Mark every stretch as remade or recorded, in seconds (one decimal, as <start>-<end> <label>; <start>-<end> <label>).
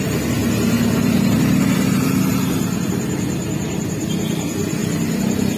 0.0-5.6 recorded